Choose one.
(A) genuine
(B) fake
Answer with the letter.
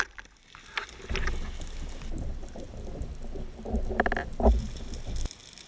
A